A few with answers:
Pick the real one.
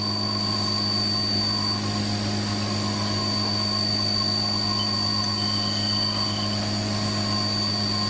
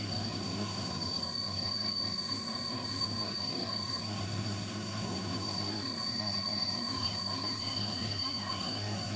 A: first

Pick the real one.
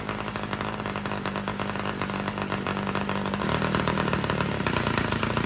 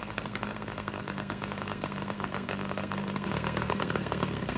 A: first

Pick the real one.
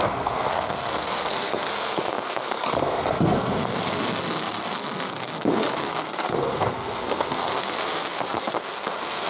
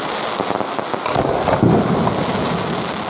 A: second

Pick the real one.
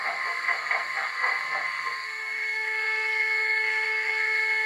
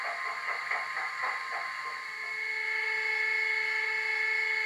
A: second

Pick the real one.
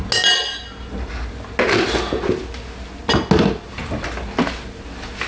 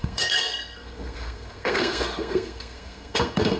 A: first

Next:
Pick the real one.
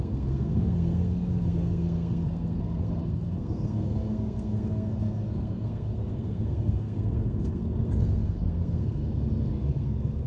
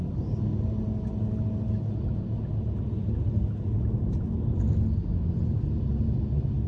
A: second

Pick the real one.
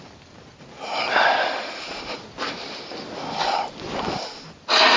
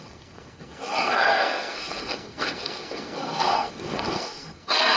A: first